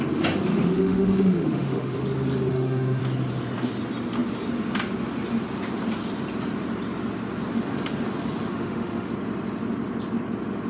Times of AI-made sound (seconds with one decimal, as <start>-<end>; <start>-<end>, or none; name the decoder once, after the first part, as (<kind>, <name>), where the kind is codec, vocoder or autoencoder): 0.5-2.0 (autoencoder, DAC-VAE); 2.5-3.0; 8.5-9.1